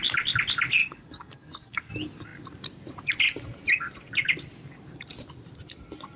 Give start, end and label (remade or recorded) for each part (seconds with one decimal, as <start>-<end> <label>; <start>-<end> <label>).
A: 0.0-0.8 recorded; 0.8-1.9 remade; 1.9-6.2 recorded